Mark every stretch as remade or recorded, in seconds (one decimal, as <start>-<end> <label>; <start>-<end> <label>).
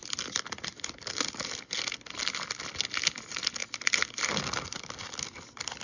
0.0-5.8 recorded